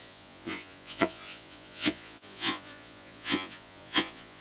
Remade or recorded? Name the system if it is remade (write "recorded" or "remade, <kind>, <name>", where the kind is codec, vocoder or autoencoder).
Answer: remade, vocoder, Vocos